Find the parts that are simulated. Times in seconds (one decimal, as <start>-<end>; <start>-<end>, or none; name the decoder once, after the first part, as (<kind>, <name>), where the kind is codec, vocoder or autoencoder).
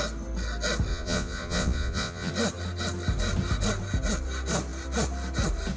0.9-2.3 (vocoder, Vocos)